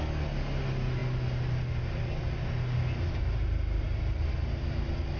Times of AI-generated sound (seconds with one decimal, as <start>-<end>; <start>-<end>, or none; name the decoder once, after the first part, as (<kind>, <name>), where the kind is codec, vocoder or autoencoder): none